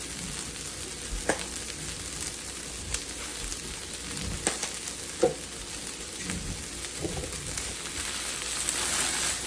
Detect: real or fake real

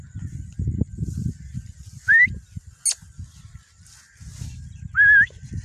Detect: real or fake real